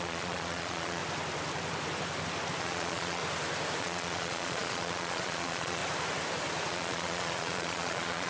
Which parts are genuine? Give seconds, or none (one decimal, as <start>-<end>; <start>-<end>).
1.0-2.6; 3.2-3.8; 5.8-6.7